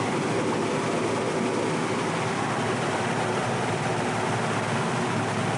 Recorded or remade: recorded